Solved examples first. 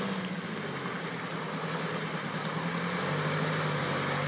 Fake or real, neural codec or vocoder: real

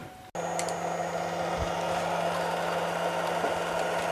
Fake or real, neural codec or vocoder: real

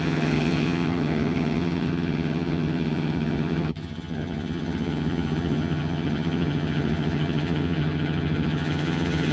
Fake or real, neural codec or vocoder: fake, vocoder, HiFi-GAN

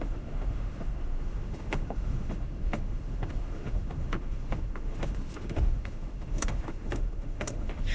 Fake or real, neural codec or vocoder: fake, autoencoder, DAC-VAE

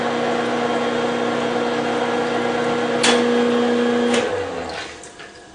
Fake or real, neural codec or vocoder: real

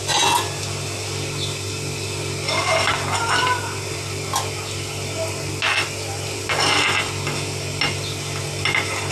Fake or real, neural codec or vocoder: real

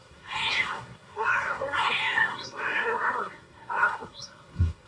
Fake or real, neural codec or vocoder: fake, codec, SNAC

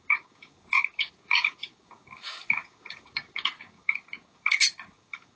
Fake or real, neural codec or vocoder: fake, codec, DAC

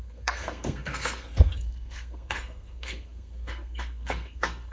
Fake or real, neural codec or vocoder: fake, codec, SNAC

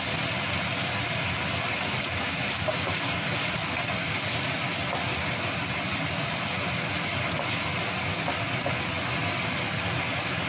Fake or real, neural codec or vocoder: real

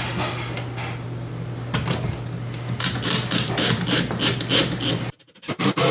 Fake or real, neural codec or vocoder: real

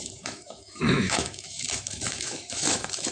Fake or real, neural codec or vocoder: fake, autoencoder, DAC-VAE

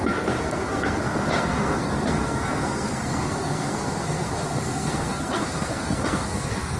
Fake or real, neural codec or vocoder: fake, codec, SNAC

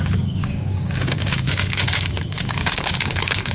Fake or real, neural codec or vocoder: fake, codec, DAC